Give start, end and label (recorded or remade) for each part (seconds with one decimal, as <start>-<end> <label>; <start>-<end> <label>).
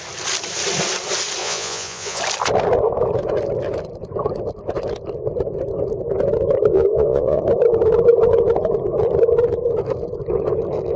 0.0-1.4 recorded; 1.4-2.2 remade; 2.2-6.7 recorded; 6.7-7.4 remade; 7.4-11.0 recorded